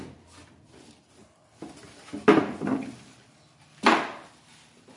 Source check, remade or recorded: recorded